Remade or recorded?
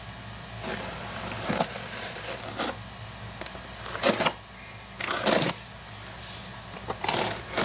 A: recorded